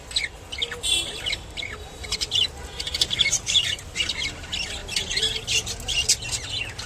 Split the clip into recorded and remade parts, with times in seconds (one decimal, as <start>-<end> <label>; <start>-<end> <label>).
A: 0.0-1.9 recorded; 1.9-4.1 remade; 4.1-6.9 recorded